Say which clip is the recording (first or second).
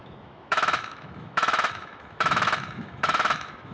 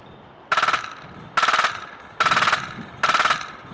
second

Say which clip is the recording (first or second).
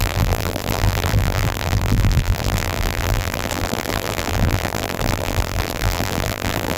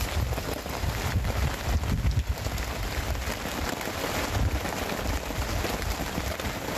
second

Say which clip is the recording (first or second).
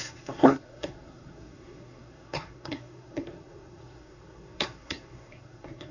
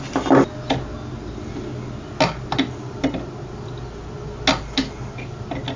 second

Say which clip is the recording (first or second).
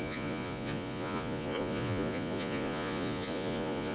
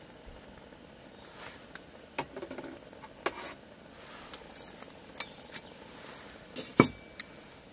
second